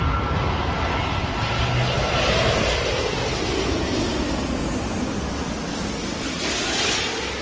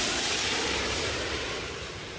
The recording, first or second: first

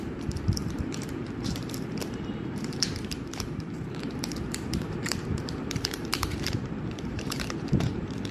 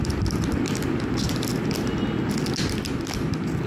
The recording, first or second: second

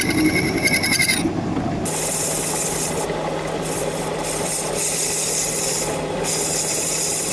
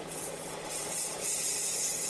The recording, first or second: first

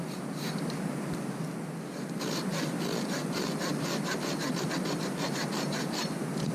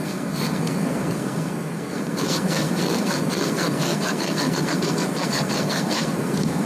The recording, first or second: first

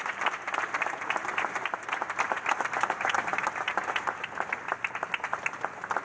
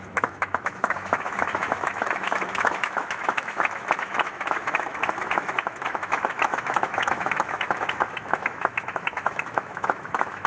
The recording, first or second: first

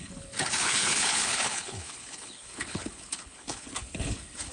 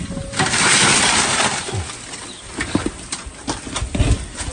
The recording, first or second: second